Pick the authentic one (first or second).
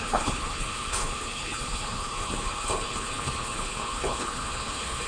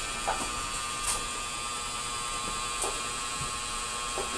second